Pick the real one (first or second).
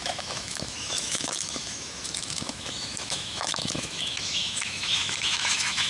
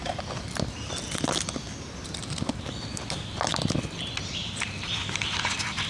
second